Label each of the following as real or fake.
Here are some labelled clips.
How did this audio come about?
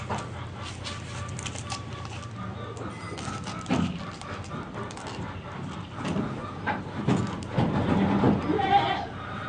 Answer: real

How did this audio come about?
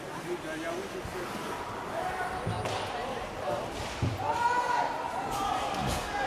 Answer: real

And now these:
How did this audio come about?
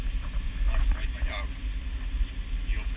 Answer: real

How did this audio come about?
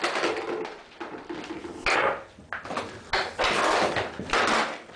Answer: real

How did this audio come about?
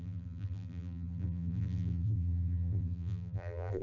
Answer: fake